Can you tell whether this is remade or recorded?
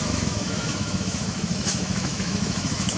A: remade